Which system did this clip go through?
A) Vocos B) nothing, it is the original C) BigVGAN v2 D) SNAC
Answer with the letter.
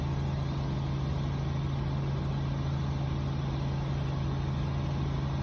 B